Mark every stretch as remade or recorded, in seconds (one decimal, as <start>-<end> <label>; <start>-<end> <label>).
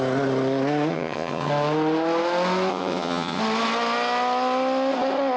0.0-0.9 recorded; 0.9-1.5 remade; 1.5-2.7 recorded; 2.7-3.4 remade; 3.4-5.4 recorded